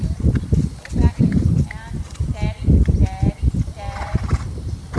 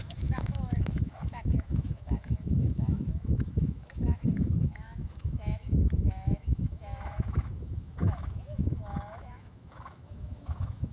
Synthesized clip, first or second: second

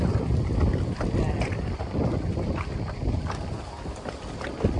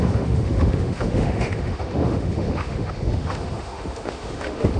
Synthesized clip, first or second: second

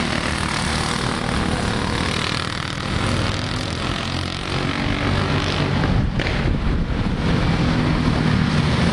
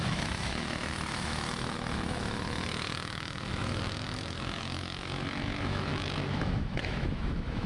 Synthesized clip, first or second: second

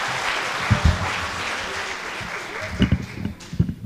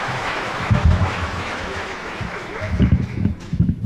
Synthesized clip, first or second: second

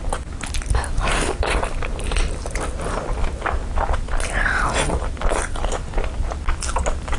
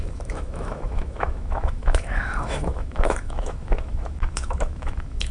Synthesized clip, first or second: second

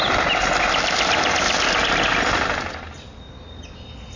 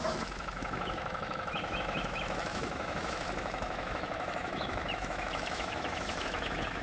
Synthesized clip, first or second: second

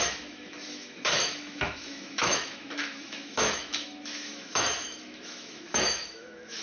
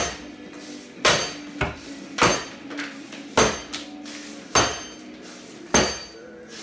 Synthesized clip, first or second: first